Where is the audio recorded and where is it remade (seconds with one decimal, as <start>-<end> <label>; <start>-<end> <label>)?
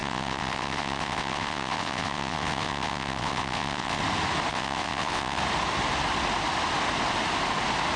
0.0-4.0 remade; 4.0-4.5 recorded; 4.5-5.4 remade; 5.4-8.0 recorded